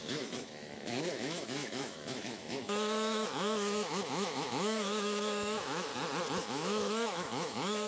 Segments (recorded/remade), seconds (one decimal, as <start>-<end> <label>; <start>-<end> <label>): 0.0-5.9 remade; 5.9-6.4 recorded; 6.4-7.9 remade

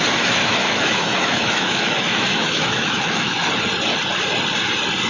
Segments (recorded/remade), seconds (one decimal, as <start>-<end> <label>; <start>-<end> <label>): 0.0-0.4 recorded; 0.4-3.5 remade; 3.5-5.1 recorded